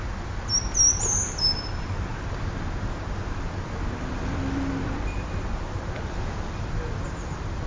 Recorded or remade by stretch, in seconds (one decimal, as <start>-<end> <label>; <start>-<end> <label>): 0.0-7.7 recorded